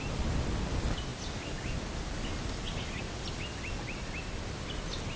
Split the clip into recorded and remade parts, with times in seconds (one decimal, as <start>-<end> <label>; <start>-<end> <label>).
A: 0.0-5.2 recorded